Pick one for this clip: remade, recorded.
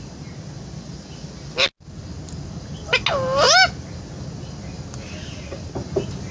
recorded